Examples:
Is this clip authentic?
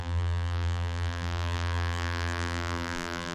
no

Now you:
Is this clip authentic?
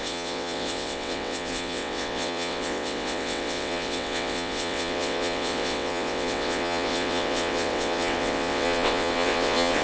no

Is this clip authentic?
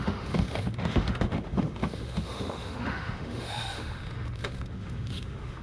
no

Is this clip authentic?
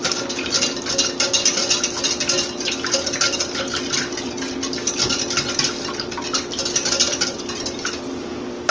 yes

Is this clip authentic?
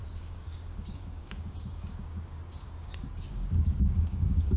no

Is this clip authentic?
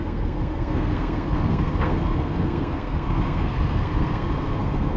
no